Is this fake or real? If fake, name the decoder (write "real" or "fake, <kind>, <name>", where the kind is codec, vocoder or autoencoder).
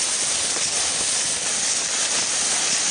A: real